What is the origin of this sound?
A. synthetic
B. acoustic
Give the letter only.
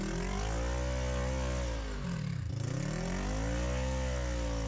B